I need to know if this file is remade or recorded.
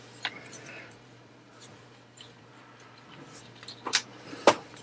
remade